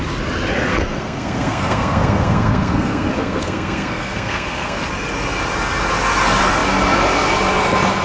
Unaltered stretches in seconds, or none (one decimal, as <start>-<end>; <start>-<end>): 0.0-0.7; 4.8-8.0